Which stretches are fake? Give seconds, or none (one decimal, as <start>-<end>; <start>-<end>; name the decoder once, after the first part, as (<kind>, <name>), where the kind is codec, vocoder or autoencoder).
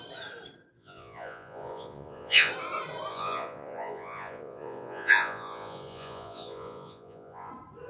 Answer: 0.8-2.5 (vocoder, Vocos); 3.1-7.5